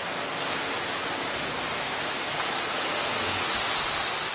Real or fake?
real